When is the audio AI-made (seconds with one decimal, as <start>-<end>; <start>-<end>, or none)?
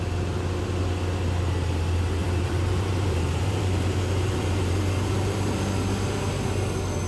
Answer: 2.2-5.8